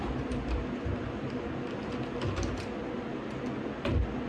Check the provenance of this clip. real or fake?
real